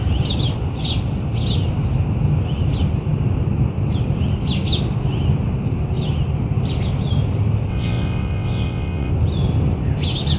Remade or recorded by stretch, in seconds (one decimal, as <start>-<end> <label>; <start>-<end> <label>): 0.0-7.7 recorded; 7.7-9.1 remade; 9.1-10.4 recorded